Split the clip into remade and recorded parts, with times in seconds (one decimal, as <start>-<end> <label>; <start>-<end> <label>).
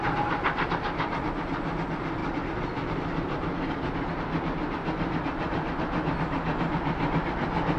0.0-7.8 recorded